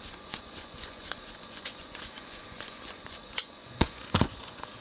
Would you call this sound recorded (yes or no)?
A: no